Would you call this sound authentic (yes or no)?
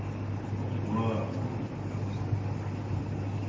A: yes